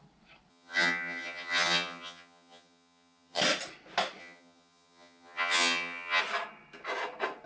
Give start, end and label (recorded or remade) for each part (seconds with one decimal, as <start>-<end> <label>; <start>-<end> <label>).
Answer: 0.0-0.5 recorded; 0.5-3.4 remade; 3.4-4.2 recorded; 4.2-6.2 remade; 6.2-7.5 recorded